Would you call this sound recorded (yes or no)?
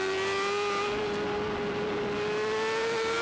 yes